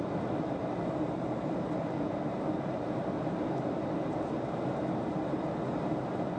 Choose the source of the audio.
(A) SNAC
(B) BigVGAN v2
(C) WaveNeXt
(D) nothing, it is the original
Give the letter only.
B